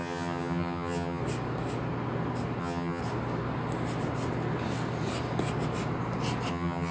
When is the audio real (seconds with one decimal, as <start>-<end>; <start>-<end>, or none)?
1.2-2.6; 3.0-6.5